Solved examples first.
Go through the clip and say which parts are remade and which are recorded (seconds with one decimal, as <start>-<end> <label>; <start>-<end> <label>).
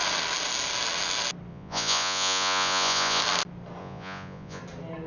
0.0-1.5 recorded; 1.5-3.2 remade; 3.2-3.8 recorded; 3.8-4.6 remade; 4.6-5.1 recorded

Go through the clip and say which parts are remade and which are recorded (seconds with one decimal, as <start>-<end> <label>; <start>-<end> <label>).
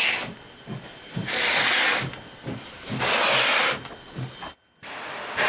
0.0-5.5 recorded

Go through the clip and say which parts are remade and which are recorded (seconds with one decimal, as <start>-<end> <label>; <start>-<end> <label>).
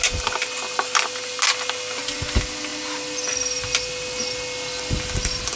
0.0-5.6 recorded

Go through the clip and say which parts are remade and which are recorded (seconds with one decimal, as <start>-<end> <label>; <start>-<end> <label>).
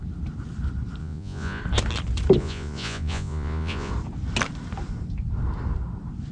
0.0-1.0 recorded; 1.0-1.6 remade; 1.6-2.4 recorded; 2.4-3.9 remade; 3.9-6.3 recorded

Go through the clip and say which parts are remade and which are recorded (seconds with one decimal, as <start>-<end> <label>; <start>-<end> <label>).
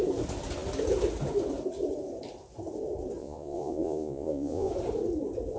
0.0-3.2 recorded; 3.2-4.7 remade; 4.7-5.6 recorded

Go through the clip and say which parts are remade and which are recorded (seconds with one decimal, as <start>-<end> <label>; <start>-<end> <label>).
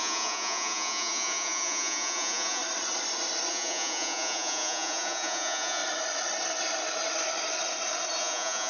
0.0-2.6 remade; 2.6-3.5 recorded; 3.5-5.8 remade; 5.8-8.2 recorded; 8.2-8.7 remade